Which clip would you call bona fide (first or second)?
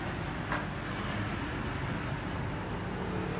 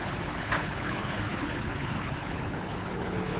first